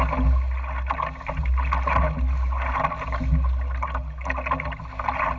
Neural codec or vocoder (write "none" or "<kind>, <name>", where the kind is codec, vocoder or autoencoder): none